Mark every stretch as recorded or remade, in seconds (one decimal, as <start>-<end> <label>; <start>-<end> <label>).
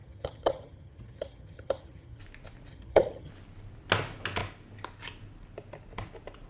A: 0.0-2.2 remade; 2.2-2.7 recorded; 2.7-3.3 remade; 3.3-6.5 recorded